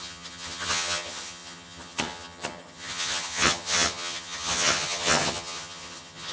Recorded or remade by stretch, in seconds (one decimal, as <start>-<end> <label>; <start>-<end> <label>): 0.0-6.3 remade